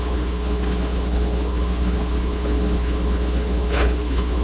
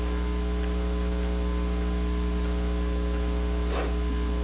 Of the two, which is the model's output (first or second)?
first